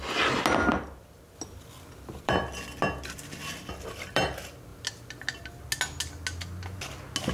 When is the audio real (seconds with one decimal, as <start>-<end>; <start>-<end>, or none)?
0.0-0.7; 4.3-7.3